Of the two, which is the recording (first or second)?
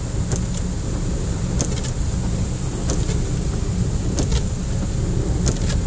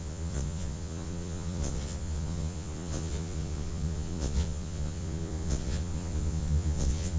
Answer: first